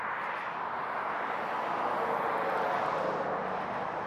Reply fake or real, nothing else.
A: real